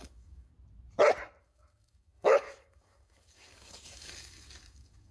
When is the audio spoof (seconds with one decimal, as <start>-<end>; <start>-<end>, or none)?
0.0-0.5; 1.4-5.1